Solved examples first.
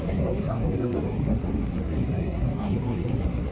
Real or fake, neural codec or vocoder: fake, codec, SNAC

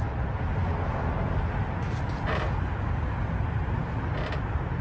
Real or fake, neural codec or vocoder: real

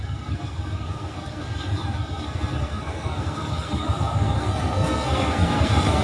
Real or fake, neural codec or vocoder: fake, codec, SNAC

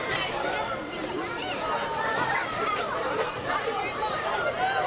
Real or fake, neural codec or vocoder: fake, vocoder, BigVGAN v2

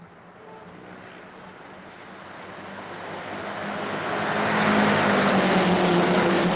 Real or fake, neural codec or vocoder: real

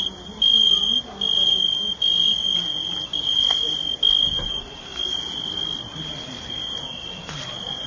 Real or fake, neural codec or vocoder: real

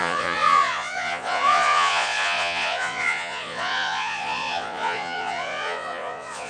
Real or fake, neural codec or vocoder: fake, vocoder, Vocos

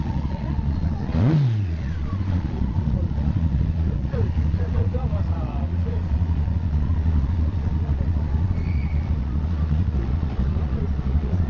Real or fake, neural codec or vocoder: fake, vocoder, Vocos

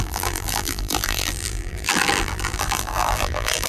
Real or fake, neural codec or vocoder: fake, vocoder, BigVGAN v2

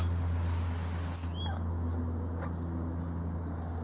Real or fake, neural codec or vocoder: real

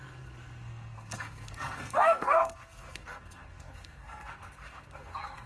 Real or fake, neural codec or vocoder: fake, codec, SNAC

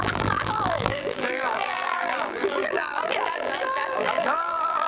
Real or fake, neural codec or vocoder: fake, vocoder, BigVGAN v2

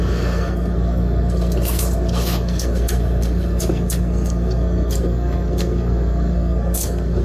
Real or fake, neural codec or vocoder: fake, codec, SNAC